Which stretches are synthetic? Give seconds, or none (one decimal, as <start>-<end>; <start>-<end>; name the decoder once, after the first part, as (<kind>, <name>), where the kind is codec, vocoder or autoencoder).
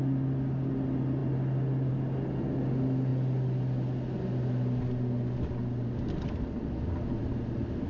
none